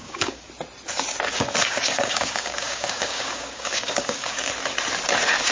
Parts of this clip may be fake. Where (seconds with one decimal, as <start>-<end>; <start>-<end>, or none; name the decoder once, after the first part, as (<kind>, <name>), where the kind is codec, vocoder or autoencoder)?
0.0-0.5 (codec, DAC); 1.3-4.5